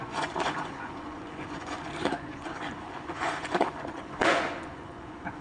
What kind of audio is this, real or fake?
fake